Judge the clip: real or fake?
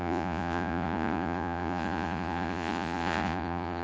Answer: fake